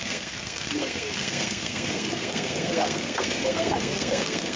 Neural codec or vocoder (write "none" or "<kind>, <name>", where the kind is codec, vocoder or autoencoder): codec, SNAC